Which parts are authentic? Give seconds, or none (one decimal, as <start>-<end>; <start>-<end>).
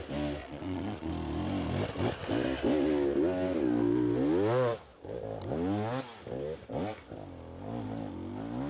0.0-0.4; 1.1-8.7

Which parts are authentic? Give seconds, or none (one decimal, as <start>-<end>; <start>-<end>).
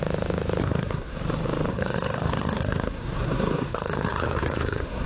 0.0-0.6; 1.2-1.7